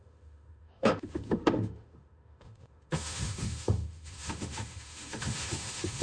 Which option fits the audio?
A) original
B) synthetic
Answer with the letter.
B